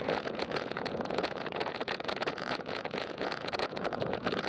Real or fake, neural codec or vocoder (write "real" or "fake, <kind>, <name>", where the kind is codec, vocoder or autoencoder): fake, vocoder, Vocos